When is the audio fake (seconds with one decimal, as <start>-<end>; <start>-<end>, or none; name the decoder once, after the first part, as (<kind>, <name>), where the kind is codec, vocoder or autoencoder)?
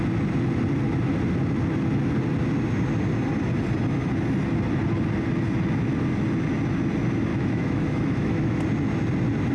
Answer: 7.3-8.6 (autoencoder, DAC-VAE)